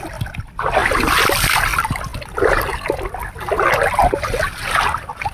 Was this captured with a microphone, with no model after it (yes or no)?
yes